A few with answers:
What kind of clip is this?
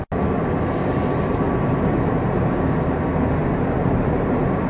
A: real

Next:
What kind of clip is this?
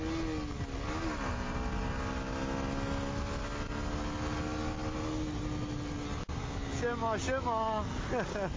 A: real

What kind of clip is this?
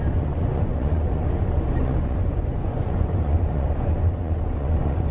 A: fake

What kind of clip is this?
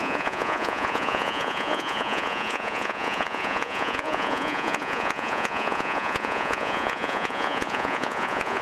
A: fake